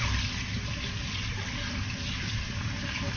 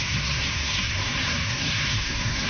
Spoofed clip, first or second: second